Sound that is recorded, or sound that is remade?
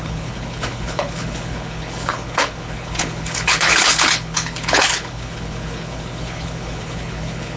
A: remade